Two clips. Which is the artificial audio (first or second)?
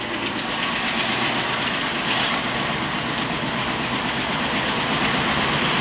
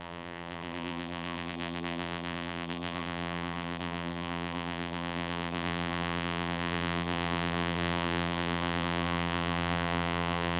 second